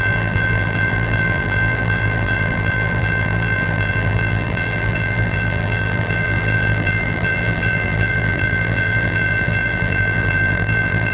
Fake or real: fake